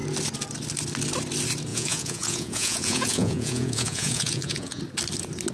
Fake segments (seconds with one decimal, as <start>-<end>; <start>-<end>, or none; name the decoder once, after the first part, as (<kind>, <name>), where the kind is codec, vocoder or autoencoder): 1.7-4.8 (vocoder, Vocos)